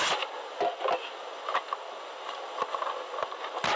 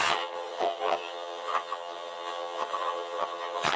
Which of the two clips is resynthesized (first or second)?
second